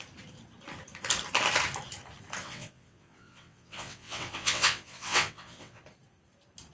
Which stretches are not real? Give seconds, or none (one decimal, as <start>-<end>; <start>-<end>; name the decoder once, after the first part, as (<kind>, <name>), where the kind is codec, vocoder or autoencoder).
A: 2.4-5.8 (vocoder, WaveNeXt)